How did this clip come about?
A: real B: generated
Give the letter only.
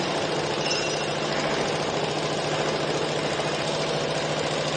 A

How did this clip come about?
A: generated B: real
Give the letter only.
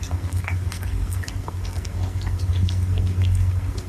A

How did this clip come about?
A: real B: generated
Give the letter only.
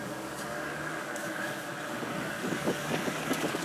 B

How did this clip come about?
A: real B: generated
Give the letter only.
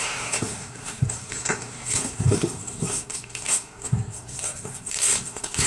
B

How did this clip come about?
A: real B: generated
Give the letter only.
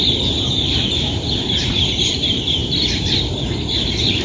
B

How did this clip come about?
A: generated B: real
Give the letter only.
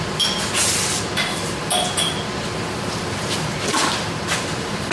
B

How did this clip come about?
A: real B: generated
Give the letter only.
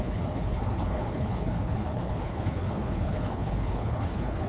B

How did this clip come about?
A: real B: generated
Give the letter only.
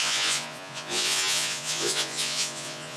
B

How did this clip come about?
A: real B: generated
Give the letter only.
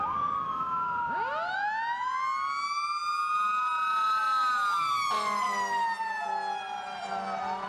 A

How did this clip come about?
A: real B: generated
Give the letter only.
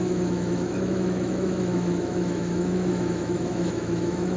B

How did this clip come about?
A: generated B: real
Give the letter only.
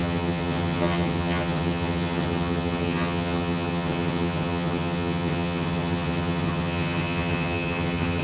A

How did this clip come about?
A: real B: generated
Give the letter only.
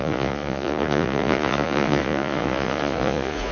B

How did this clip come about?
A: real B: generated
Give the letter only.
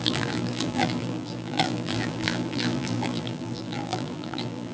B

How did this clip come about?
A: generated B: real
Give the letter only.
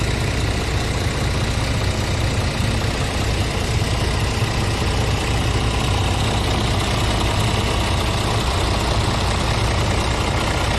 B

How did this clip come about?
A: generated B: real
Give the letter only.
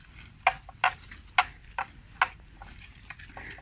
B